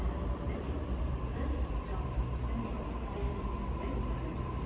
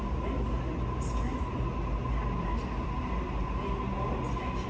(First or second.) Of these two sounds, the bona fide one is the second